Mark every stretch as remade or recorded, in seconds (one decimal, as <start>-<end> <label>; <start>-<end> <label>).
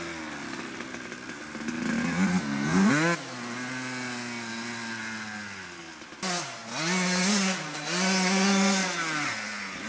0.0-2.3 recorded; 2.3-2.9 remade; 2.9-9.9 recorded